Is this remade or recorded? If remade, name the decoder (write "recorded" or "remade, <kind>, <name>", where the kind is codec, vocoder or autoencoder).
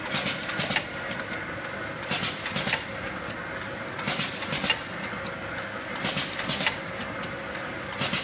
recorded